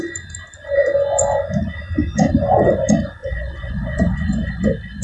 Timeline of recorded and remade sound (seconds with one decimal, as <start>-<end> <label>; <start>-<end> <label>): 0.0-3.2 recorded; 3.2-4.6 remade; 4.6-5.0 recorded